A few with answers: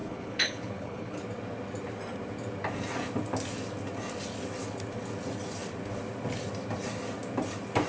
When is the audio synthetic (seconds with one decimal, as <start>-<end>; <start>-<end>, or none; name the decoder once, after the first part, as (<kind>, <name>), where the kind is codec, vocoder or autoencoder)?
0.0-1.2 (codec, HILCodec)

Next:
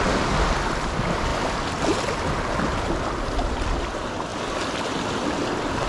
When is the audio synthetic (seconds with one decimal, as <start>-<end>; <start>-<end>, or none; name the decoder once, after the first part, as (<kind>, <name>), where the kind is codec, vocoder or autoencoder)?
none

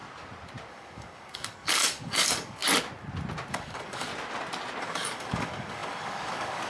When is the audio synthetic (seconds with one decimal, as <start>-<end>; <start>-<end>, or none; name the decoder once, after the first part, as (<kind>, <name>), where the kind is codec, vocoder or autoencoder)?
0.7-2.6 (codec, DAC); 3.5-4.1; 4.8-6.7

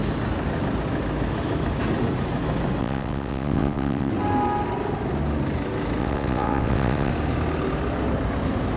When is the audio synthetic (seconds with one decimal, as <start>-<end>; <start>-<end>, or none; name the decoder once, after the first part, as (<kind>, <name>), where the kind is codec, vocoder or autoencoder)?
2.8-4.1 (vocoder, WaveNeXt); 6.0-7.1

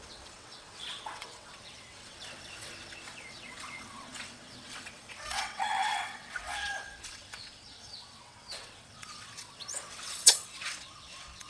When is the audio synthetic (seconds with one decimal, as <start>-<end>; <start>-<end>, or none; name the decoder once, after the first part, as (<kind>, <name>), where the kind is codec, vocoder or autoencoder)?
0.0-11.5 (vocoder, WaveNeXt)

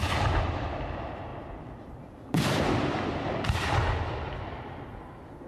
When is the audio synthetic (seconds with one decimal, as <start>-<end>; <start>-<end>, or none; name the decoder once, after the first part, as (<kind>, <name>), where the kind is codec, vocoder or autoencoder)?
none

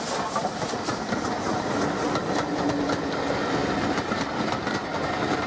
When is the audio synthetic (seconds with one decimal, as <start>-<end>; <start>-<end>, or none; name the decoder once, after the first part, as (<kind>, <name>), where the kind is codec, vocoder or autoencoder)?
none

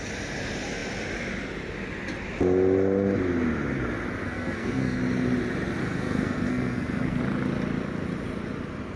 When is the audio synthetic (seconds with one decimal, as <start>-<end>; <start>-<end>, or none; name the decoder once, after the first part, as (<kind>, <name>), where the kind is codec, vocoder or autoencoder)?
4.2-5.0 (codec, SNAC); 5.8-7.2